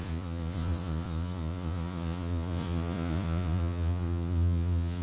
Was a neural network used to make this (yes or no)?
yes